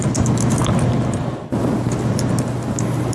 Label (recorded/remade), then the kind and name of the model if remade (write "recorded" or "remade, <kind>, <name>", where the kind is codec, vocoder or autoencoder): recorded